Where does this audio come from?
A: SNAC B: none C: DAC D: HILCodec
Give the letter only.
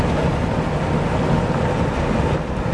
B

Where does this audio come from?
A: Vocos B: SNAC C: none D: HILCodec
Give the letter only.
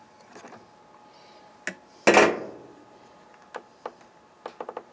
C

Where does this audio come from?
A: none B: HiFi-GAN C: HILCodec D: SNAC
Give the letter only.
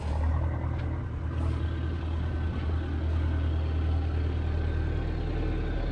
A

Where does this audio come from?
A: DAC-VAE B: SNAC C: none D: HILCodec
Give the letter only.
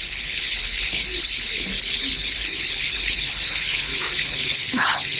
D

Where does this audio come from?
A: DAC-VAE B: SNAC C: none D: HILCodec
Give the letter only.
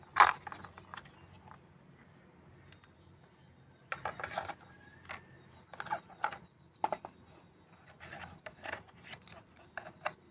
C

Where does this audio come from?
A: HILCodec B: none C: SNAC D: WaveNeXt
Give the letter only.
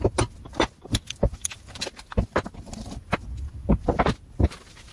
B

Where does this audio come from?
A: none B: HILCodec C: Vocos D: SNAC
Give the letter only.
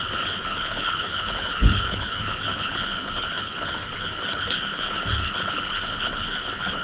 B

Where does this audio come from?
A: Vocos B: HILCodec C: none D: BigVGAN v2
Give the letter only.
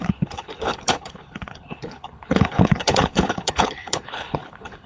B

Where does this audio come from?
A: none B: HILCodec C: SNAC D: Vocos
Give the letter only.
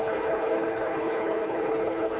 B